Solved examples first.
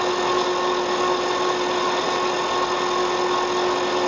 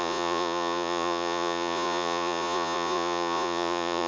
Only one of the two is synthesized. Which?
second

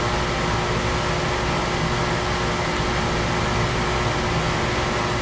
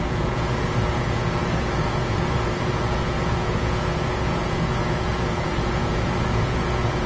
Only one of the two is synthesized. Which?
second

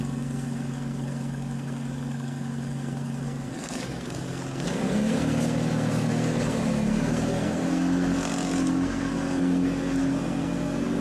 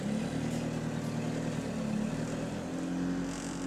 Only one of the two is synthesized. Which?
first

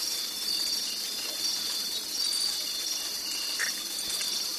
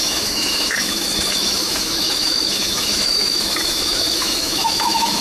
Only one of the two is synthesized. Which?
second